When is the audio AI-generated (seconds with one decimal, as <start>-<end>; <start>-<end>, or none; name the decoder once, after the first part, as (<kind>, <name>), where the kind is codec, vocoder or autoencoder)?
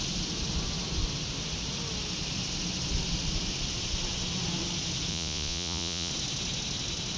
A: 5.1-6.1 (vocoder, Vocos)